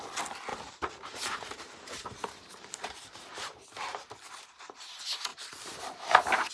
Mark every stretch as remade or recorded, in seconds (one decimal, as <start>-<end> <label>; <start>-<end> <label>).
0.0-0.5 recorded; 0.5-4.4 remade; 4.4-5.3 recorded; 5.3-6.5 remade